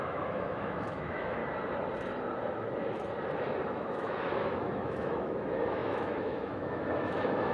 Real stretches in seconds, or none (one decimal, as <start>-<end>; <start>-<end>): 1.4-3.7